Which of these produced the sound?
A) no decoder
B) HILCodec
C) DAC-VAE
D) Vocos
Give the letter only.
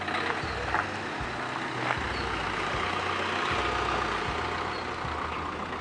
A